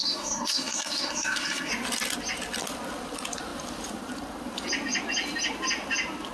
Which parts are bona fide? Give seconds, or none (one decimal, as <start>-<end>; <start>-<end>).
1.7-6.3